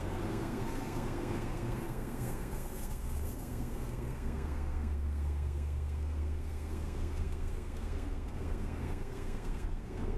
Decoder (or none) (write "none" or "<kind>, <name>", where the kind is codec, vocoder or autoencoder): codec, SNAC